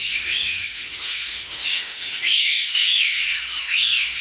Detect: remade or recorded remade